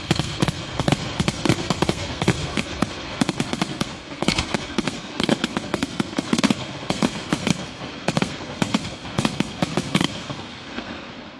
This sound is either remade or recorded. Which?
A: remade